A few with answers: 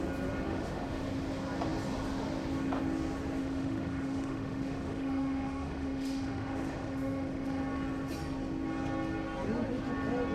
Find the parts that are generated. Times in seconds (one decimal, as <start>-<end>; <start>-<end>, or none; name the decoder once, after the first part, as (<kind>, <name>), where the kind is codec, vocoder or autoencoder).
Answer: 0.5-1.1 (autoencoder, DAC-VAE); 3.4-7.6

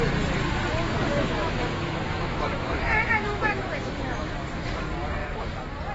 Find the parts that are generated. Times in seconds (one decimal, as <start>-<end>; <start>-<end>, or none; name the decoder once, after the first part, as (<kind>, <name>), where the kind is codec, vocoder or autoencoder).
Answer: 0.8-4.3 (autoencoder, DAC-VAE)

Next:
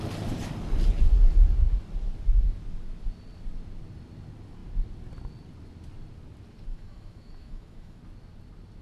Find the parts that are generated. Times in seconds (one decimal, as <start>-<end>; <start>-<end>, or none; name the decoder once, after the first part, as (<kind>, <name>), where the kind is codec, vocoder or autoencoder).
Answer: 6.7-8.0 (autoencoder, DAC-VAE)

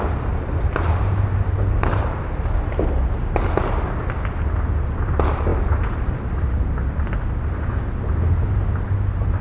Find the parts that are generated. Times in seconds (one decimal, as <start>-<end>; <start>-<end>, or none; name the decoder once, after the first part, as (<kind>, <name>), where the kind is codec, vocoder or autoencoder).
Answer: none

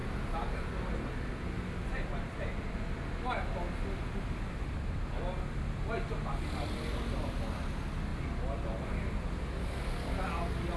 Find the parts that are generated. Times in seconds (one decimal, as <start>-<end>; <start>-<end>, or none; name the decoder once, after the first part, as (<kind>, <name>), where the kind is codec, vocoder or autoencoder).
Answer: none

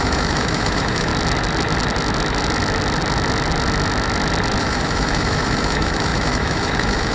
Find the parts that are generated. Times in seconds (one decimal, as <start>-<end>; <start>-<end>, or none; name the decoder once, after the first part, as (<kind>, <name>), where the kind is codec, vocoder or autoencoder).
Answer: 0.0-1.1 (autoencoder, DAC-VAE); 4.6-7.1